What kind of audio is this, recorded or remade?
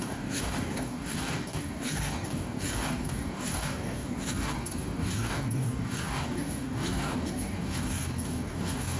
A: remade